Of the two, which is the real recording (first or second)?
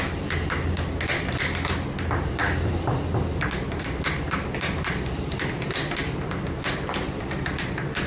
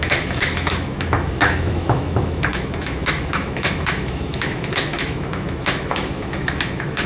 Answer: first